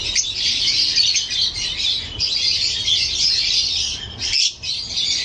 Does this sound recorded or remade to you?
recorded